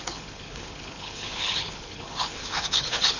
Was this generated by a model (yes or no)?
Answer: yes